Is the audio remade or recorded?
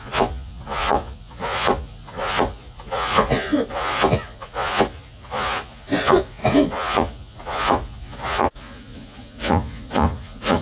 remade